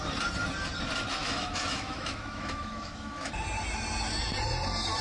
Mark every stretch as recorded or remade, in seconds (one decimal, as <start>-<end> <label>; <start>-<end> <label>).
0.0-1.2 recorded; 1.2-3.3 remade; 3.3-5.0 recorded